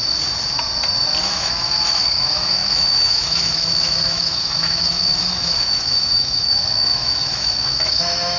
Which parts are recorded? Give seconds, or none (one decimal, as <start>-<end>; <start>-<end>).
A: 0.0-1.2